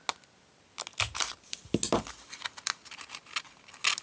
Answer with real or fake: real